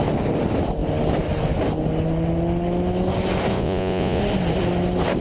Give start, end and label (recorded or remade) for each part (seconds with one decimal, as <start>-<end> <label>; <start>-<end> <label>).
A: 0.0-3.5 recorded; 3.5-4.2 remade; 4.2-5.2 recorded